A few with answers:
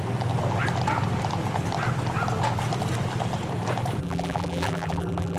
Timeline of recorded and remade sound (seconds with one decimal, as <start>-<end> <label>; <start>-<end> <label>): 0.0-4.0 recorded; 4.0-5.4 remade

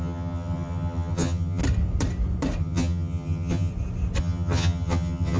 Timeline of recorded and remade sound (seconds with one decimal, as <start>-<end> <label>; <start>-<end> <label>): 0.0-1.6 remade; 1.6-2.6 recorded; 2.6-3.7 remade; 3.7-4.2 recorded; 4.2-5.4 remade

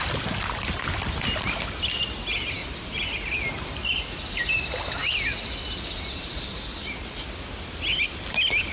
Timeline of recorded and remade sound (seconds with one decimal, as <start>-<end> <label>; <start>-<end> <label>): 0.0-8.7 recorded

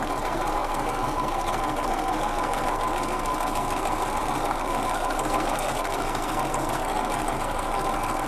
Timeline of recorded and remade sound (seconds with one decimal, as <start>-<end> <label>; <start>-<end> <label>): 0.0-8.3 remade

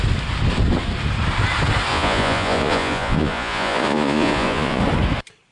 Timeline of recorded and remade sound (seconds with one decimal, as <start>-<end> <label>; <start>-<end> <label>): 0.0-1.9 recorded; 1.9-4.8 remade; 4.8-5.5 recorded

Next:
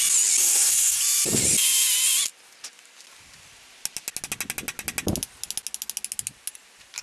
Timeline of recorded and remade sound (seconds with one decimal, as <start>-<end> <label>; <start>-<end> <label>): 0.0-0.4 recorded; 0.4-1.0 remade; 1.0-7.0 recorded